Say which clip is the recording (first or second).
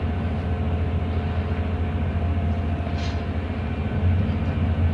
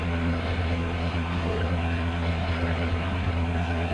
first